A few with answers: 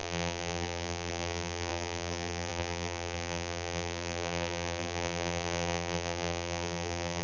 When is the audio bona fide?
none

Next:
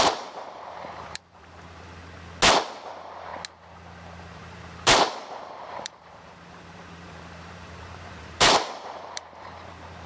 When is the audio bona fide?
2.0-2.6; 3.3-4.2

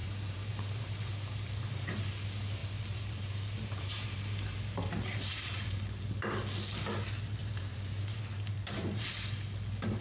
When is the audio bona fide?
2.1-2.6; 6.0-7.4; 9.1-10.0

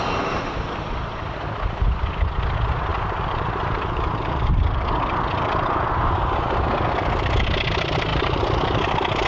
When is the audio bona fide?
0.0-2.9; 4.6-8.1; 8.8-9.3

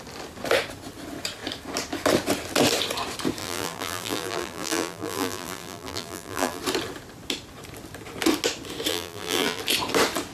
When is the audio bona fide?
0.0-3.4; 6.6-8.9; 9.6-10.3

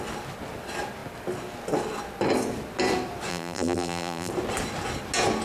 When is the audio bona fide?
0.0-3.3; 4.3-5.4